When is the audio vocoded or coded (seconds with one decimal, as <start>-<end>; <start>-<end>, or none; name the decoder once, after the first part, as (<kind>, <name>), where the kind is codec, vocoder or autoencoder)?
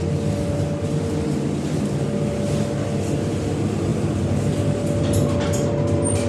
none